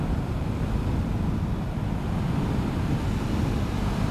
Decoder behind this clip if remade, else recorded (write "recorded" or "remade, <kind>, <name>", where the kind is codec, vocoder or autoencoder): recorded